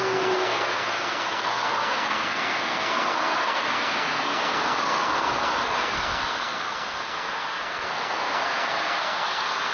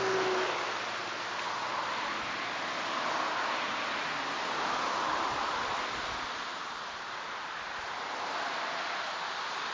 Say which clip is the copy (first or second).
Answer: first